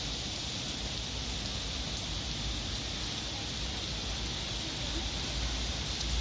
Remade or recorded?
recorded